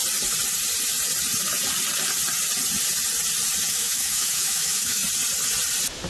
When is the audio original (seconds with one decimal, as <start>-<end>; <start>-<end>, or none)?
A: 0.0-3.7; 5.0-6.1